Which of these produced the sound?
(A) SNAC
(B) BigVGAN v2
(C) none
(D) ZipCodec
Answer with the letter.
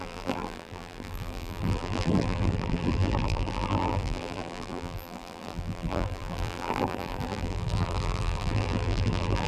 B